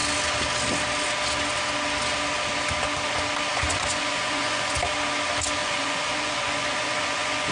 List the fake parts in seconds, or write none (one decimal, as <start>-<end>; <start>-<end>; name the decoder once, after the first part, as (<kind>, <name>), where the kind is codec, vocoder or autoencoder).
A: 3.5-4.8 (vocoder, Vocos); 5.6-7.5

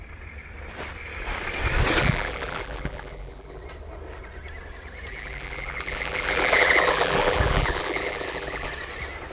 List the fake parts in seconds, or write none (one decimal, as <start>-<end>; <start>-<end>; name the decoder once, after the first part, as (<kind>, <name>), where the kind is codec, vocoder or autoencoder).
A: 2.0-3.6 (vocoder, BigVGAN v2); 5.1-8.7

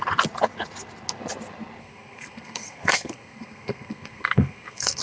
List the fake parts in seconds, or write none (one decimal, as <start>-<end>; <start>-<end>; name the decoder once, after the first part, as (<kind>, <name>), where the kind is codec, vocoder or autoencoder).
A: 1.8-5.0 (codec, SNAC)

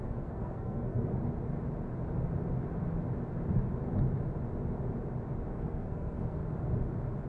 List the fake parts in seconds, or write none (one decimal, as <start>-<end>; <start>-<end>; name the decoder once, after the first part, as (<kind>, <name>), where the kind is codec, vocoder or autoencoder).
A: 0.0-1.1 (codec, SNAC); 5.5-6.4

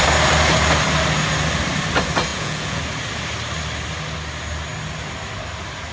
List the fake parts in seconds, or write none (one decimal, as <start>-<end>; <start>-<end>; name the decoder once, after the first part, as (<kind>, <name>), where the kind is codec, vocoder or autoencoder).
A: 2.3-2.8 (vocoder, Vocos)

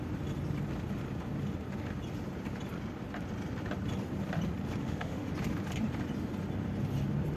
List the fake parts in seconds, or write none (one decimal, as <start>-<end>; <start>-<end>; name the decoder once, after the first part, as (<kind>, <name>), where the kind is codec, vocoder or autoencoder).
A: 4.8-5.3 (autoencoder, DAC-VAE)

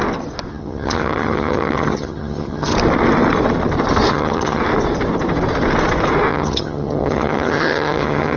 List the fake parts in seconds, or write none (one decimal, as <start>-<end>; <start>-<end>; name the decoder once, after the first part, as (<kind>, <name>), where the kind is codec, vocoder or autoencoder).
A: 0.5-2.7 (vocoder, HiFi-GAN); 4.1-4.6; 6.3-8.4